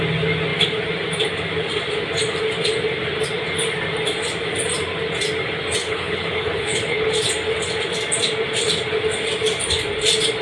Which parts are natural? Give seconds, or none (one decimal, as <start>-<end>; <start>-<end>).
0.0-5.8; 7.1-10.4